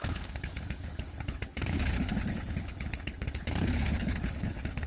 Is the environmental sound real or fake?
fake